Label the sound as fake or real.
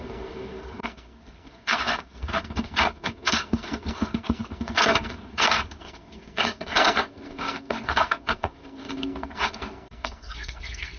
fake